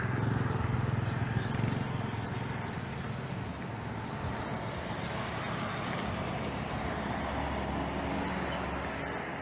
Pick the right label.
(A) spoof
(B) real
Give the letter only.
B